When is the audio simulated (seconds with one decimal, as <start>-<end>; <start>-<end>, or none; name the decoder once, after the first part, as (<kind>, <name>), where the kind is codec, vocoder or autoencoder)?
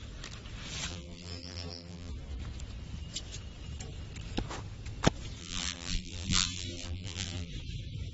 0.9-2.1 (vocoder, BigVGAN v2); 5.4-7.5